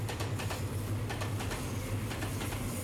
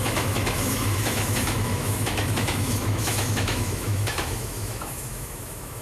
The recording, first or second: first